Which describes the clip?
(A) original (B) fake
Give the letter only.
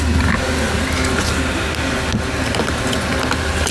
A